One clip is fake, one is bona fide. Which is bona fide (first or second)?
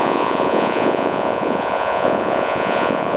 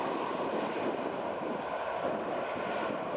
second